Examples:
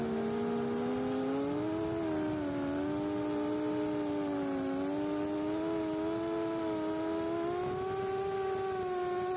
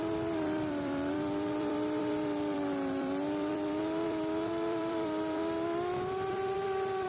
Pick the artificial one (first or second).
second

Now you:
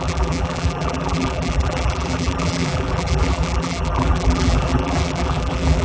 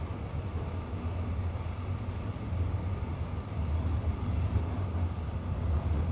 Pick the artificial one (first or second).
first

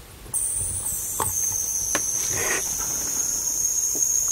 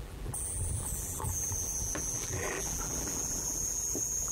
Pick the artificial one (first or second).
second